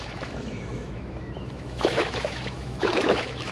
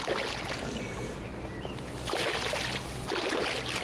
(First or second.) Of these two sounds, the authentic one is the second